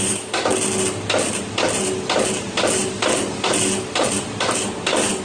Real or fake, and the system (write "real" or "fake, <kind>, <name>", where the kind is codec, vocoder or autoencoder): real